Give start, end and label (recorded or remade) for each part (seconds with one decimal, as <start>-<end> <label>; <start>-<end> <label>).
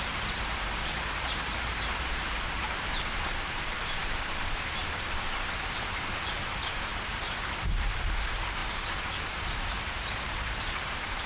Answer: 0.0-11.3 remade